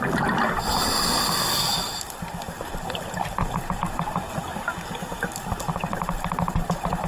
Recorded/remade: recorded